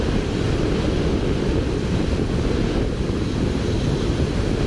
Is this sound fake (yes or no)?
no